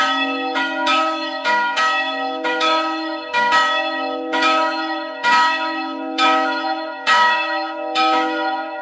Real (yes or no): no